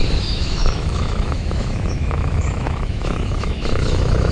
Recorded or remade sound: remade